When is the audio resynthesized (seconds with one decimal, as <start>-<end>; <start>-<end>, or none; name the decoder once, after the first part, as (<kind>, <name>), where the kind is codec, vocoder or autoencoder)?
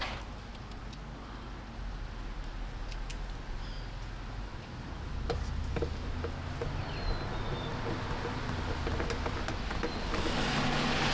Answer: none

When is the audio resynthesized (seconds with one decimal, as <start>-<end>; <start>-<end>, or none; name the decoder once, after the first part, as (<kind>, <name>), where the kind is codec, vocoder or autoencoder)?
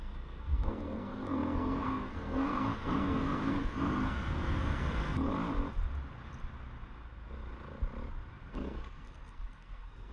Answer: 0.0-5.3 (codec, SNAC); 8.4-10.1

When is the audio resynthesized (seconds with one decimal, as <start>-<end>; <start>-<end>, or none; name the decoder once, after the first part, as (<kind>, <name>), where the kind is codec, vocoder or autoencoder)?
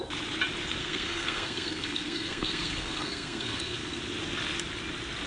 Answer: 0.8-4.0 (codec, SNAC)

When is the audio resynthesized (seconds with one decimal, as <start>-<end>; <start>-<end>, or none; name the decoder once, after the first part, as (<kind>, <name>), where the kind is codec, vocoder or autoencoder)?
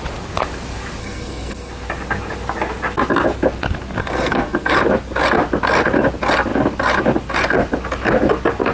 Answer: 1.0-1.7 (codec, SNAC); 4.0-4.7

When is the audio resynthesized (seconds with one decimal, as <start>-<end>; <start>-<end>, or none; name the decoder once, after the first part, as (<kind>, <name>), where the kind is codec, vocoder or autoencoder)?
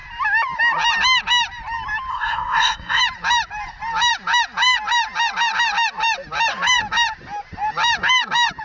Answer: 2.1-3.0 (codec, SNAC)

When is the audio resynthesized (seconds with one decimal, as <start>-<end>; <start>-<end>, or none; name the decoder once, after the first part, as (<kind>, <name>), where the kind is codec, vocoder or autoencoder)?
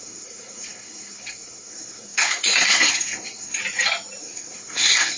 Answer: 0.0-3.6 (codec, SNAC); 4.2-5.2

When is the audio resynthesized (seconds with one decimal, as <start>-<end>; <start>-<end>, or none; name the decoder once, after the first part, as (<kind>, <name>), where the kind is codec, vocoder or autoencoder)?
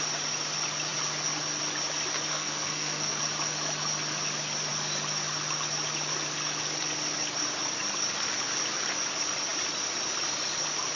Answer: 2.3-3.2 (codec, SNAC)